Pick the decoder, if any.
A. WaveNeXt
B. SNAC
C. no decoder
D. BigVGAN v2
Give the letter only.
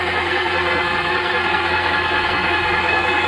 B